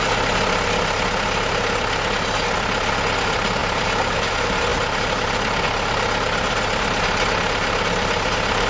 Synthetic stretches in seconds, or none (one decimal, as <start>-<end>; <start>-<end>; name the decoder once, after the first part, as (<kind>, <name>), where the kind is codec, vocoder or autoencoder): none